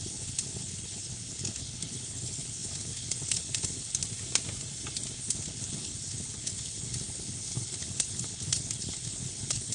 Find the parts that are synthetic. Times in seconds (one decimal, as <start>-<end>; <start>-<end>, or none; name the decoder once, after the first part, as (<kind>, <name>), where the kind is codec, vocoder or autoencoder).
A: 0.0-4.0 (codec, HILCodec); 5.2-9.7